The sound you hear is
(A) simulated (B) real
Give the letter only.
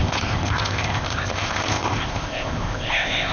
A